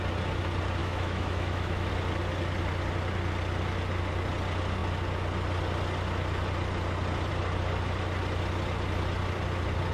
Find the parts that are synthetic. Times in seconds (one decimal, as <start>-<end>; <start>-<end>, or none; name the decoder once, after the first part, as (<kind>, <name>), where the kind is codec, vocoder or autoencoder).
0.8-1.9 (autoencoder, DAC-VAE)